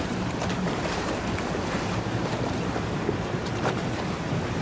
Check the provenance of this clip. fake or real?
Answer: fake